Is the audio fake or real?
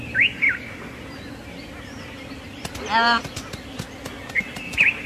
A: real